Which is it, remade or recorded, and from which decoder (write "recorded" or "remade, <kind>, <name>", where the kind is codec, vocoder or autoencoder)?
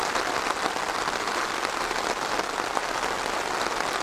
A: recorded